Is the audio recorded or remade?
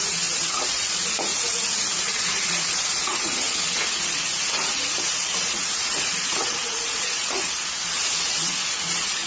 remade